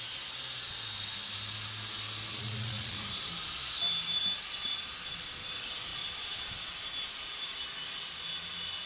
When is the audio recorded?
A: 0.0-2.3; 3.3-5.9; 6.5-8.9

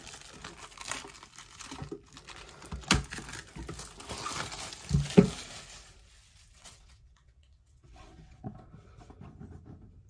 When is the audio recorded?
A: 0.0-6.5; 9.1-10.1

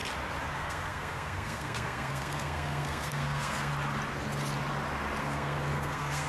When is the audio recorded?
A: 0.0-0.5; 3.7-5.2

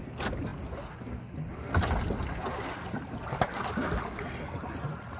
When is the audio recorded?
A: 0.0-5.2

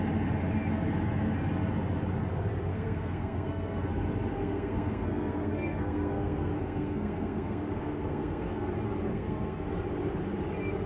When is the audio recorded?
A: 0.0-2.7; 3.9-4.3; 8.7-9.1; 9.7-10.9